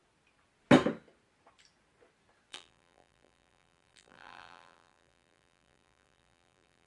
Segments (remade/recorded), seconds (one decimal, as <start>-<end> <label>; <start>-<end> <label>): 0.0-2.5 recorded; 2.5-6.9 remade

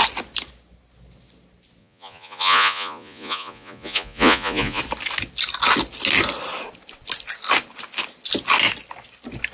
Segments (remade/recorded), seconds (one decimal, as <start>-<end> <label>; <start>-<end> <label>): 0.0-1.8 recorded; 1.8-4.8 remade; 4.8-9.5 recorded

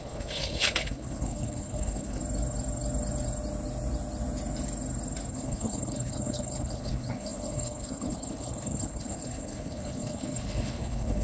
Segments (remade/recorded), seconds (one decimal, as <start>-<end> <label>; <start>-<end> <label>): 0.0-2.2 remade; 2.2-5.3 recorded; 5.3-11.2 remade

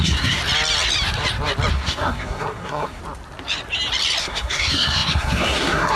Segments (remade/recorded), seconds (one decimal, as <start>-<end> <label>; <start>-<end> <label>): 0.0-0.4 remade; 0.4-1.7 recorded; 1.7-3.0 remade; 3.0-4.2 recorded; 4.2-6.0 remade

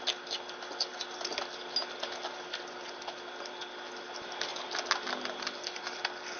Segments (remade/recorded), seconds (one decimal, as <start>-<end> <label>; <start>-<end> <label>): 0.0-6.4 recorded